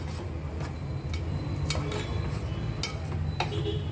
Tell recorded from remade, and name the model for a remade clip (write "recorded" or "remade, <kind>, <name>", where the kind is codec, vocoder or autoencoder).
recorded